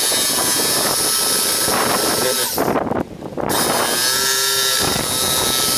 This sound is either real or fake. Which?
real